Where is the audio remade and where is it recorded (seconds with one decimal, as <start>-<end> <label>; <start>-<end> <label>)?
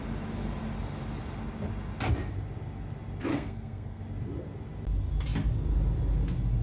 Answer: 0.0-3.3 recorded; 3.3-4.0 remade; 4.0-6.6 recorded